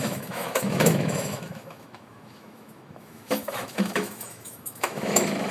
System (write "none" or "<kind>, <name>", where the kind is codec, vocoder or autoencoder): autoencoder, DAC-VAE